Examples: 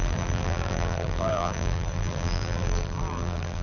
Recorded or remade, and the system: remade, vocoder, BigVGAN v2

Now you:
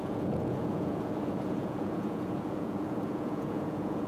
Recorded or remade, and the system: remade, vocoder, Vocos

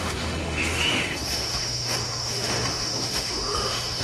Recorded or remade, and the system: remade, autoencoder, DAC-VAE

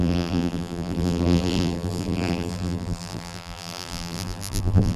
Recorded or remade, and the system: remade, vocoder, BigVGAN v2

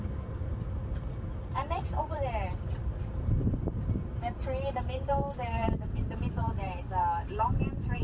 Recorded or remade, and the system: remade, vocoder, BigVGAN v2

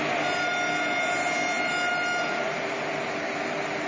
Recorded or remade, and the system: recorded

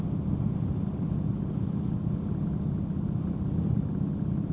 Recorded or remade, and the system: recorded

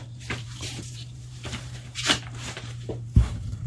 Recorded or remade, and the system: remade, vocoder, BigVGAN v2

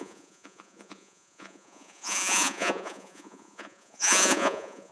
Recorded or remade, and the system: remade, vocoder, Vocos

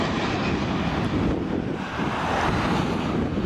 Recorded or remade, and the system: recorded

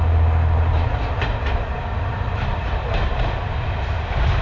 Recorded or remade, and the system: recorded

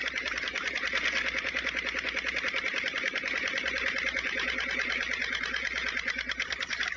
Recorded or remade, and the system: recorded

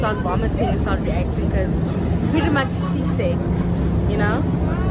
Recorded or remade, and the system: recorded